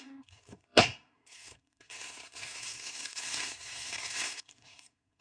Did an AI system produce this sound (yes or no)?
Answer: yes